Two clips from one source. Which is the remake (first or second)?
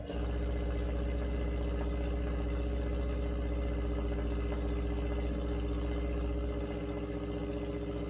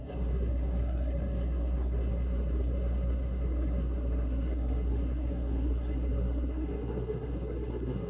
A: second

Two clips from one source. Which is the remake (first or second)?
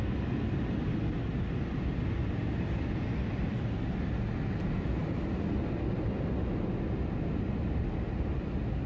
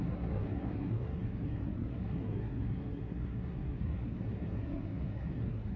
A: second